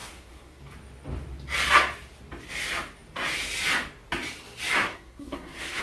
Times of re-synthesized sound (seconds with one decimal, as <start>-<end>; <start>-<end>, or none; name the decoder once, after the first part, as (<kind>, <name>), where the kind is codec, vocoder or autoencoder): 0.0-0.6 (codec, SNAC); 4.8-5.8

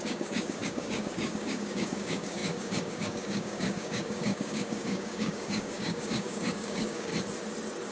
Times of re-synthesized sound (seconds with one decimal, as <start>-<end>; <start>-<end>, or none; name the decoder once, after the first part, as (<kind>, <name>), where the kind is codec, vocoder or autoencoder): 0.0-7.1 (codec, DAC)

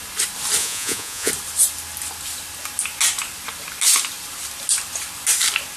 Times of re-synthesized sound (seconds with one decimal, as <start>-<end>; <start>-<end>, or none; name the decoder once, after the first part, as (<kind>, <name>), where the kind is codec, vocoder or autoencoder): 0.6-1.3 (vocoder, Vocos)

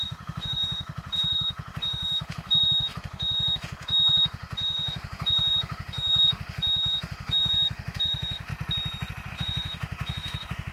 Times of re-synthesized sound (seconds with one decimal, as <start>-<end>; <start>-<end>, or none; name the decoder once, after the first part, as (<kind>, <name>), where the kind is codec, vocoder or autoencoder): 0.0-8.5 (autoencoder, DAC-VAE); 9.3-10.7

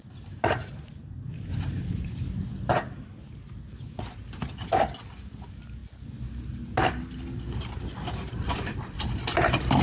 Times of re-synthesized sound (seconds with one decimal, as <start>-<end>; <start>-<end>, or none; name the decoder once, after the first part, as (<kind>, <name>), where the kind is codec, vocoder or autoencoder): none

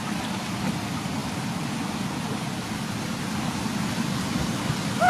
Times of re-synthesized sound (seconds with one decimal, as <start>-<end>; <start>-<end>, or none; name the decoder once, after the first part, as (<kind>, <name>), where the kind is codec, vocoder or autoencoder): none

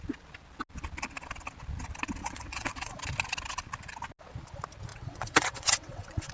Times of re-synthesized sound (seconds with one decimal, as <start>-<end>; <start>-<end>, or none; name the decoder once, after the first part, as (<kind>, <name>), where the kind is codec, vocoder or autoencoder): 2.2-3.0 (vocoder, WaveNeXt); 4.9-6.3